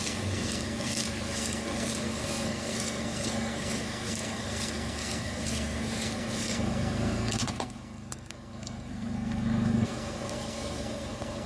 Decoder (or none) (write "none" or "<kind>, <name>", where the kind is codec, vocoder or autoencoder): codec, SNAC